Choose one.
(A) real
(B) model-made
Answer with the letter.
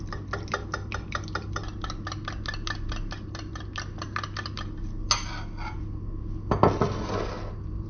A